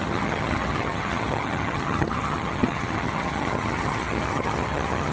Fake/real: fake